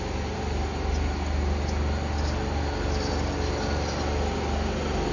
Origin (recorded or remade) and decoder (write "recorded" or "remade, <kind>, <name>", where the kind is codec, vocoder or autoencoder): recorded